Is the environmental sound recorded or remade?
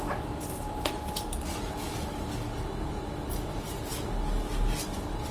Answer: recorded